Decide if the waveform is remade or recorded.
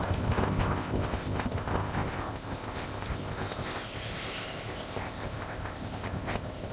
remade